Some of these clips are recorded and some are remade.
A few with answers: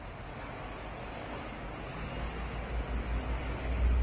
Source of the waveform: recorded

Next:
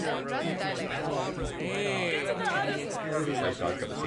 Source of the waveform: recorded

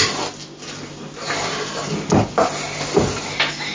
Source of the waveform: recorded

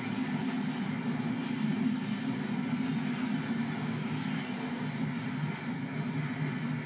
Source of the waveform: recorded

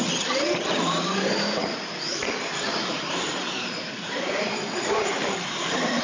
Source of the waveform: remade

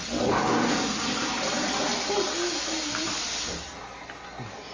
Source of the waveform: recorded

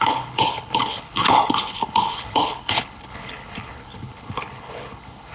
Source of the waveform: remade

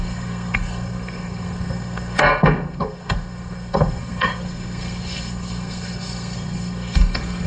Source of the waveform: remade